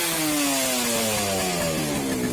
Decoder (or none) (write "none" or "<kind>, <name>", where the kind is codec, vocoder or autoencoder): none